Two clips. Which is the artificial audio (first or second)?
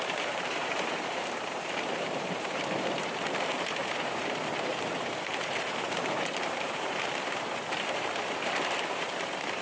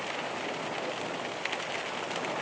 first